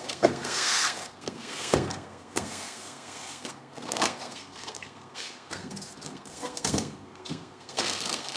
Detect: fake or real fake